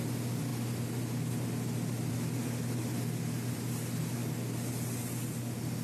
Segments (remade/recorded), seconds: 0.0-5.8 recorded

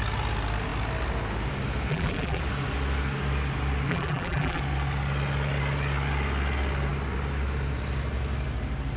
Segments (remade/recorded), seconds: 0.0-1.9 recorded; 1.9-2.4 remade; 2.4-3.9 recorded; 3.9-4.6 remade; 4.6-9.0 recorded

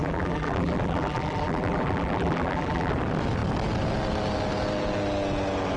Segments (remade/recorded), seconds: 0.0-2.9 remade; 2.9-5.8 recorded